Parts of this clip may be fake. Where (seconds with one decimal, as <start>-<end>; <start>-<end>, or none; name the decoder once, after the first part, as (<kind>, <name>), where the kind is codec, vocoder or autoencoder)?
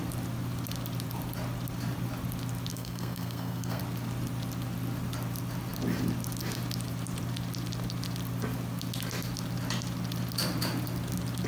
2.7-3.8 (codec, SNAC)